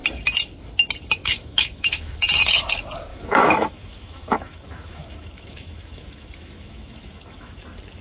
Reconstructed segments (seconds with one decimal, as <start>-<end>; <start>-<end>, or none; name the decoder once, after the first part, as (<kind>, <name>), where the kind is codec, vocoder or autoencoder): 1.2-2.7 (autoencoder, DAC-VAE); 3.1-7.6